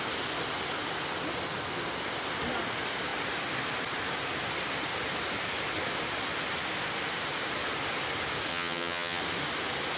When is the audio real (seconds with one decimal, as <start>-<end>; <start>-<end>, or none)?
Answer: 0.0-8.5; 9.2-10.0